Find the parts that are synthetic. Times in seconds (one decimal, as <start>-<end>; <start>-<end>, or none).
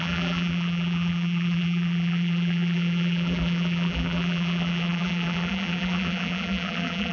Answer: 0.0-7.1